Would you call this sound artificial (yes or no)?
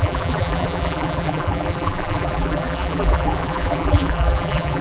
yes